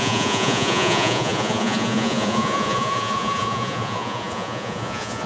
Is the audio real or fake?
fake